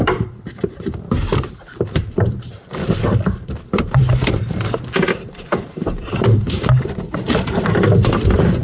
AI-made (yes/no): yes